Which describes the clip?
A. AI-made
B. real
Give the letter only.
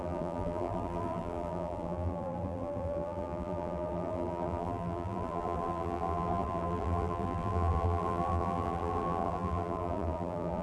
A